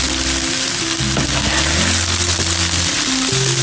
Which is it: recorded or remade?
recorded